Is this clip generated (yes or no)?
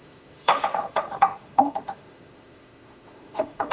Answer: yes